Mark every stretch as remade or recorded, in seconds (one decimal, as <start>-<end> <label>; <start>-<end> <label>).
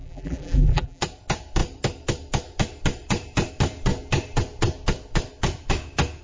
0.0-1.0 remade; 1.0-6.2 recorded